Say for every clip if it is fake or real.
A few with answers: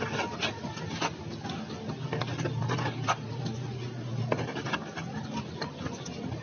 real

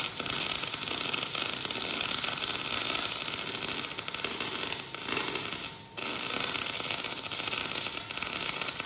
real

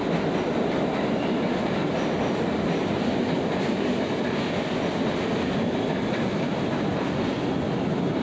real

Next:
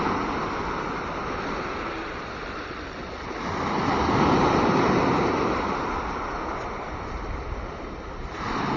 real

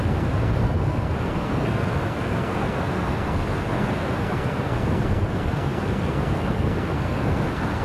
fake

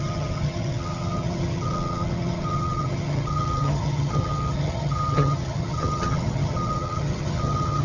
fake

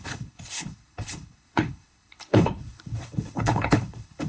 fake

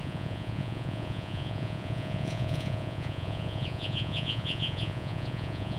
fake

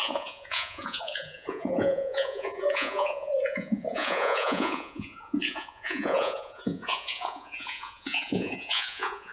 fake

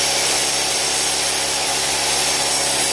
real